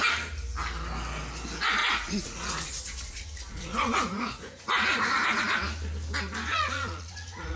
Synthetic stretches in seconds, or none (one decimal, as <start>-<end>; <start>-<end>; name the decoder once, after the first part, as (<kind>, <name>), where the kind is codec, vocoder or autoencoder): 1.8-5.4 (vocoder, Vocos); 6.5-7.6